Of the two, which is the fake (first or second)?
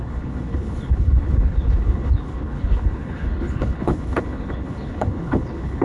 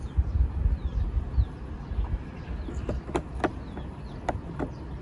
first